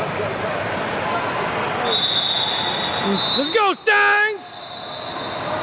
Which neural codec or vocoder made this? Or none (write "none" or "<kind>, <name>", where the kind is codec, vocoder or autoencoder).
none